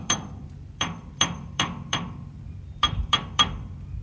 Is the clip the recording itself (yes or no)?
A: no